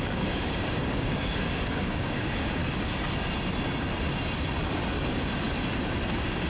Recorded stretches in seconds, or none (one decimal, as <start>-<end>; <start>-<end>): 2.6-6.1